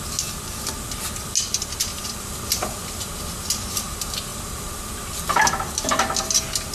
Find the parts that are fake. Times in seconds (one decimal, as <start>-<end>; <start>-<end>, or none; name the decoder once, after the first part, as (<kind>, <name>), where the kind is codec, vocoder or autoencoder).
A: 1.9-3.0 (vocoder, BigVGAN v2); 4.3-4.9